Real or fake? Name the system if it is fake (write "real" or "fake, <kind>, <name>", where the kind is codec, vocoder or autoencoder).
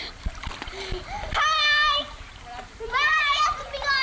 real